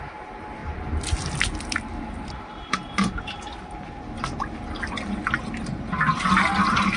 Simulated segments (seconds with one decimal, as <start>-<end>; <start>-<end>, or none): none